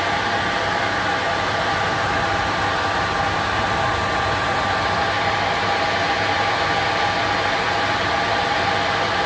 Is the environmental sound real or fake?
real